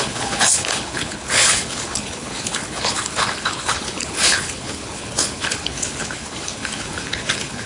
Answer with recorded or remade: remade